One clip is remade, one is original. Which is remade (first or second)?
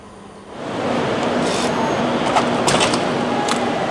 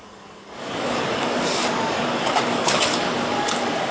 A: second